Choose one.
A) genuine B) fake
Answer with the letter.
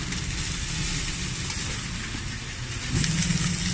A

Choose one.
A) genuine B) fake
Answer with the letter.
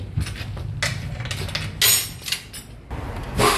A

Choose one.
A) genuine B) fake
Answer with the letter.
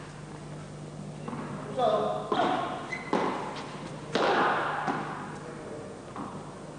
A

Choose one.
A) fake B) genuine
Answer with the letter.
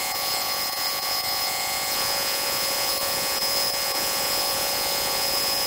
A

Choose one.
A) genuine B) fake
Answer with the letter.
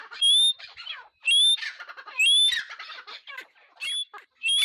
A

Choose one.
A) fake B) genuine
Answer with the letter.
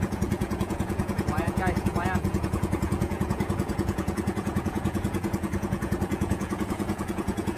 A